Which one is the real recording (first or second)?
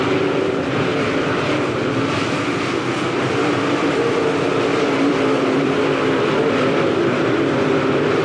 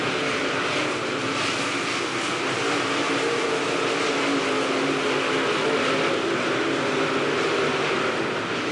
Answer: second